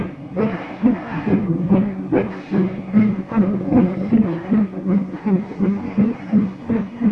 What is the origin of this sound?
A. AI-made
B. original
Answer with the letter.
A